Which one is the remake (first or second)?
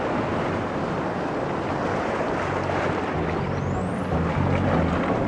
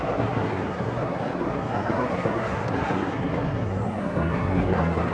second